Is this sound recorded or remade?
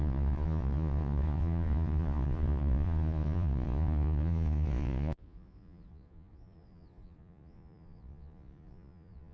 remade